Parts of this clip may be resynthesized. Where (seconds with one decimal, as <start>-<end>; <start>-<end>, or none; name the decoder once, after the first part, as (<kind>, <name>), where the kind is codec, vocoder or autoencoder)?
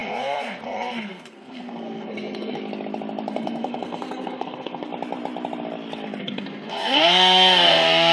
0.0-2.6 (codec, SNAC); 3.3-4.9; 6.2-8.1